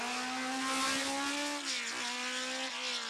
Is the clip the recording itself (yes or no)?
yes